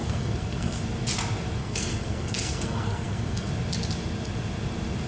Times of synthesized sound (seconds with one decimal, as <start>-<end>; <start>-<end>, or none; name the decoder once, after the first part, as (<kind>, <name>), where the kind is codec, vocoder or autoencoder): 0.0-0.8 (codec, SNAC); 1.6-3.5

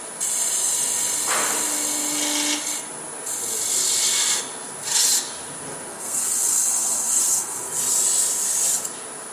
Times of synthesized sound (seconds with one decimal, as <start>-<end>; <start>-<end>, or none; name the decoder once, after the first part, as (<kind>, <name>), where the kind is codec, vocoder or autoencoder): 5.9-7.6 (codec, SNAC)

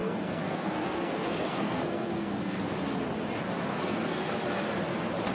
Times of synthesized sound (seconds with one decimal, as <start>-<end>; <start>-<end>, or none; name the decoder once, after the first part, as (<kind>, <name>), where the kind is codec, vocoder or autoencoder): 0.0-2.6 (codec, SNAC); 3.7-4.3

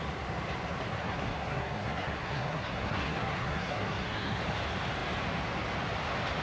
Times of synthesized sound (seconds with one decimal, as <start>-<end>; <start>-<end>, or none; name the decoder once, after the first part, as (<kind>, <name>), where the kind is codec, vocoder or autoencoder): 0.9-4.4 (codec, SNAC)